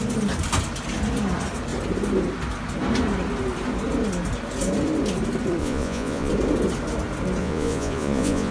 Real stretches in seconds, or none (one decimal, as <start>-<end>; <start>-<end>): 0.0-5.6; 6.3-7.4